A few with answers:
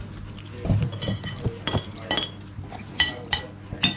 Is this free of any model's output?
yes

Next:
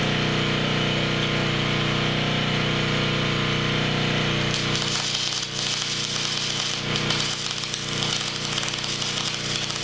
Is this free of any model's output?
yes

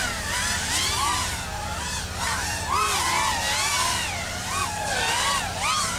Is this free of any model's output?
yes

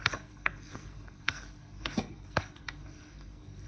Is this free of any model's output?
no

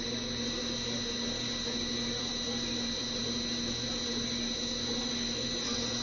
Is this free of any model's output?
yes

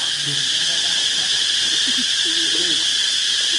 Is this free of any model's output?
yes